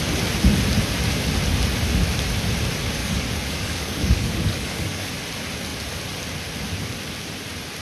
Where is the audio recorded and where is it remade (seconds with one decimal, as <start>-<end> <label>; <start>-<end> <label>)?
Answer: 0.0-3.0 recorded; 3.0-5.1 remade; 5.1-7.8 recorded